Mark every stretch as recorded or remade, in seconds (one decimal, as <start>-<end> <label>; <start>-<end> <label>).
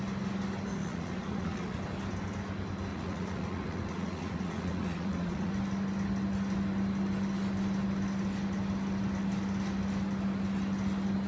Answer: 0.0-0.8 recorded; 0.8-1.8 remade; 1.8-2.9 recorded; 2.9-5.5 remade; 5.5-11.3 recorded